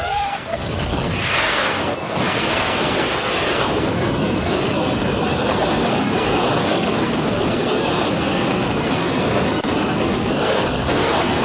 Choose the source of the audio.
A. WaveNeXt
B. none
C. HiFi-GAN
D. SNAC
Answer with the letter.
D